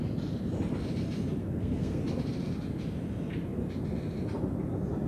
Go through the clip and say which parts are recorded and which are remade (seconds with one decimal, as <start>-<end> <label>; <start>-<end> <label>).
0.0-1.4 recorded; 1.4-2.0 remade; 2.0-5.1 recorded